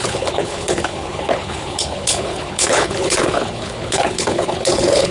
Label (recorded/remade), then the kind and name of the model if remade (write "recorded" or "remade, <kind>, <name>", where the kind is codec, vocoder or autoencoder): remade, codec, HILCodec